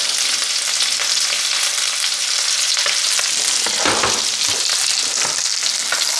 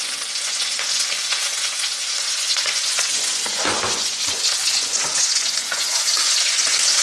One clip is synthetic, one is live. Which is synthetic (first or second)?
second